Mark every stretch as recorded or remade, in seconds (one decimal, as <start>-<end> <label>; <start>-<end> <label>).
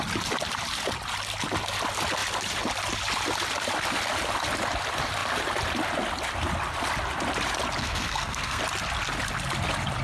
0.0-7.8 recorded; 7.8-8.6 remade; 8.6-10.0 recorded